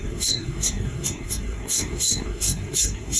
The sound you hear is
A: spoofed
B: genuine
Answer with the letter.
A